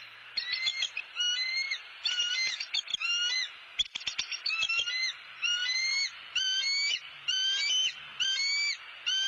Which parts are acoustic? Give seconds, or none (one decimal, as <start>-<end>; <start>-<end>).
0.0-9.3